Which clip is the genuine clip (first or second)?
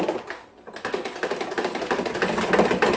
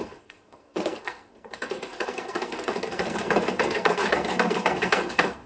first